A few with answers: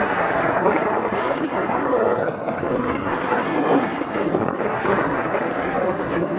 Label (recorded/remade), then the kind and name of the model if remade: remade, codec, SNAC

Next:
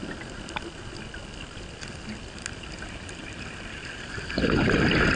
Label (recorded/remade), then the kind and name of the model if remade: recorded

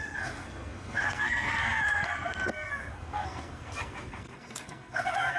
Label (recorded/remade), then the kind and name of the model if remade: remade, codec, SNAC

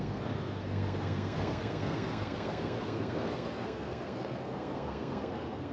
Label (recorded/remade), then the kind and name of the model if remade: remade, codec, SNAC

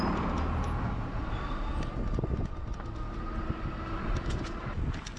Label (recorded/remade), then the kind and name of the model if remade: recorded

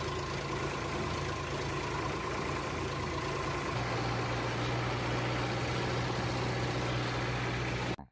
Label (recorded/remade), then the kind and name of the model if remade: recorded